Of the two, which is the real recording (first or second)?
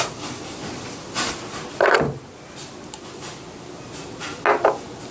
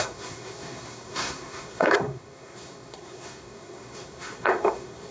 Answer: first